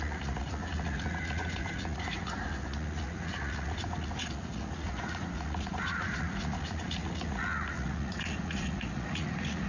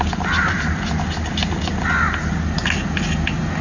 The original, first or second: second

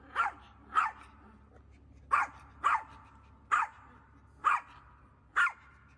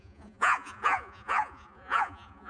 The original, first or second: first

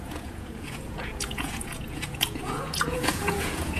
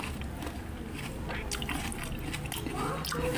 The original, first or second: second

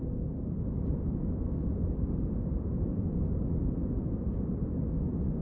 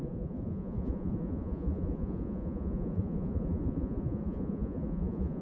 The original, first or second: first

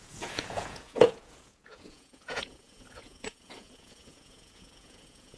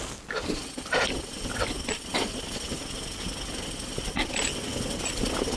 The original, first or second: second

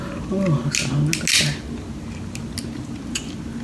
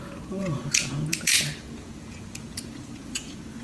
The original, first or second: first